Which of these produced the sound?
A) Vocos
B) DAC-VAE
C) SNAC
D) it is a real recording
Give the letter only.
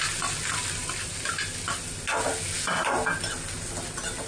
D